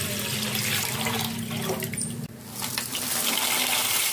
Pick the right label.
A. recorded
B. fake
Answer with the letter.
A